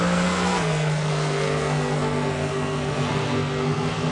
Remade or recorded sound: remade